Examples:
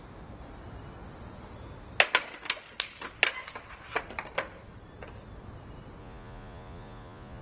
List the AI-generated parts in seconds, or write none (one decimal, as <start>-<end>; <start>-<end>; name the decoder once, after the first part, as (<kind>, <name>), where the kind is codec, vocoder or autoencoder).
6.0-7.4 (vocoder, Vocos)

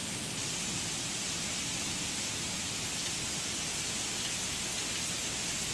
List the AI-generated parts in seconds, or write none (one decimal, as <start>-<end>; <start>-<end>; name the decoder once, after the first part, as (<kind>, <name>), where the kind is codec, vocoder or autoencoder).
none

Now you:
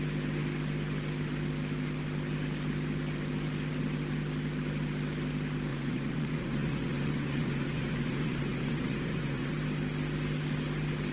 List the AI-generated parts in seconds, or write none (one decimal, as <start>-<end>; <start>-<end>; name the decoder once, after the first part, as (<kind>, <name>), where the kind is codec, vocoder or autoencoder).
5.7-9.5 (vocoder, Vocos)

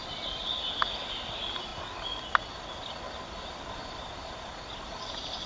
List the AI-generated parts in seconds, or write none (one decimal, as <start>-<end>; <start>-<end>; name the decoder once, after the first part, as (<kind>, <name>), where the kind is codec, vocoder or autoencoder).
none